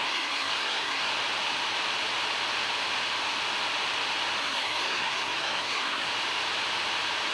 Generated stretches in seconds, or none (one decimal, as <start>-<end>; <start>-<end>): 0.0-1.1; 4.4-6.1